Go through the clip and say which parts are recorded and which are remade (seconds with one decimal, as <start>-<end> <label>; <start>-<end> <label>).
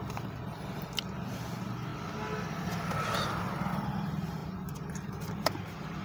0.0-1.9 remade; 1.9-3.7 recorded; 3.7-6.0 remade